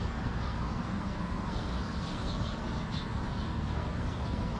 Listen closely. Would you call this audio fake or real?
fake